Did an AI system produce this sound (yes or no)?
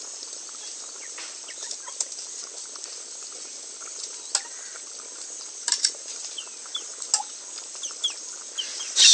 no